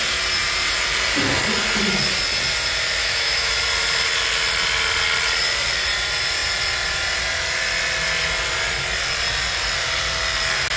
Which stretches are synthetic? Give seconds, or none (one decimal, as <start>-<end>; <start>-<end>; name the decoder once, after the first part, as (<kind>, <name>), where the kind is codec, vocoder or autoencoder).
3.0-3.5 (autoencoder, DAC-VAE)